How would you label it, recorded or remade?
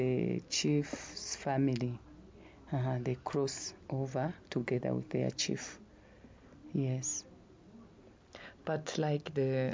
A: recorded